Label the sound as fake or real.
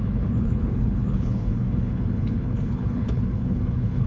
fake